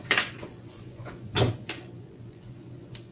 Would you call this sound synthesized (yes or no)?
yes